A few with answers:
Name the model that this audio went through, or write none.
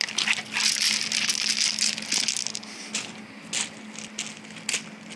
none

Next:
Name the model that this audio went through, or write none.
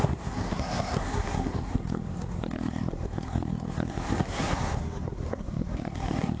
codec, SNAC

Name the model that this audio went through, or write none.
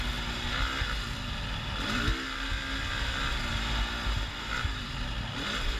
none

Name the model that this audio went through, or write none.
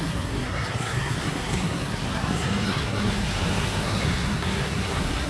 codec, SNAC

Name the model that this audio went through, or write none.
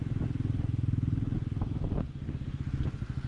none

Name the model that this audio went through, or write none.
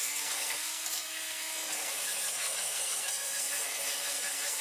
codec, SNAC